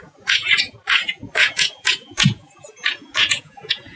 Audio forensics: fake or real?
fake